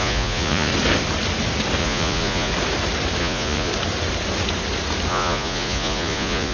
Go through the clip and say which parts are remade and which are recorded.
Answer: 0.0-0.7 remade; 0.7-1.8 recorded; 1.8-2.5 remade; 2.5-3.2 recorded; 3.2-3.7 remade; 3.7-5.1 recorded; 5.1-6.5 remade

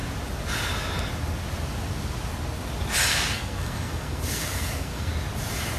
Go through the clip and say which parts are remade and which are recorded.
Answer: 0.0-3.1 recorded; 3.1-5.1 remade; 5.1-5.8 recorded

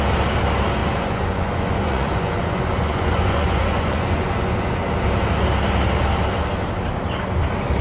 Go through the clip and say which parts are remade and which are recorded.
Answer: 0.0-0.8 recorded; 0.8-4.9 remade; 4.9-7.8 recorded

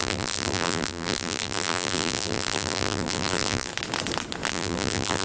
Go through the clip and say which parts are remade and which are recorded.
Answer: 0.0-3.7 remade; 3.7-4.5 recorded; 4.5-5.2 remade

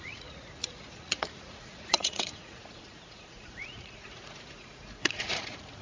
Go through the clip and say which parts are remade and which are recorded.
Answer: 0.0-5.8 remade

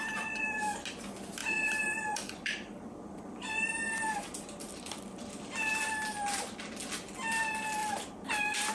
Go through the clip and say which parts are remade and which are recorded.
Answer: 0.0-1.4 recorded; 1.4-5.5 remade; 5.5-7.8 recorded; 7.8-8.7 remade

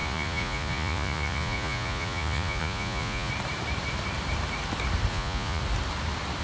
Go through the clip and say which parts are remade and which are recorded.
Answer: 0.0-3.3 remade; 3.3-5.1 recorded; 5.1-5.6 remade; 5.6-6.4 recorded

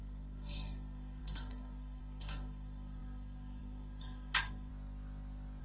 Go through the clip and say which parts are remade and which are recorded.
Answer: 0.0-4.7 remade; 4.7-5.6 recorded